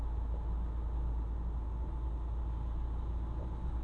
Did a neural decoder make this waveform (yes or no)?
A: no